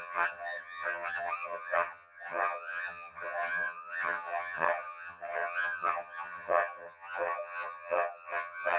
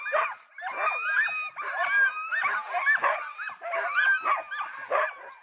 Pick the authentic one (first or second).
second